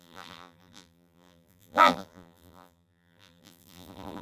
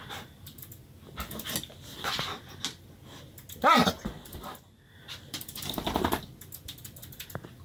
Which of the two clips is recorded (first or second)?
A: second